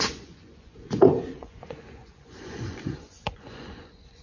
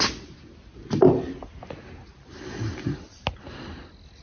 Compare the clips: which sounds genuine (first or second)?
second